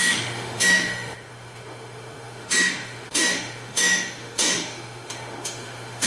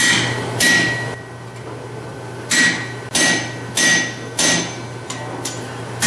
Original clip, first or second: second